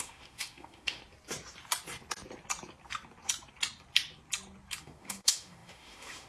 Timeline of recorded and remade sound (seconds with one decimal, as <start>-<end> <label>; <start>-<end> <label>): 0.0-1.0 remade; 1.0-4.8 recorded; 4.8-6.3 remade